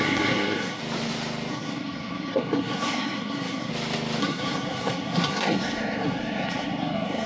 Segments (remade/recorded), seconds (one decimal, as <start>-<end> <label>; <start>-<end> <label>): 0.0-0.8 remade; 0.8-1.5 recorded; 1.5-3.7 remade; 3.7-4.2 recorded; 4.2-7.3 remade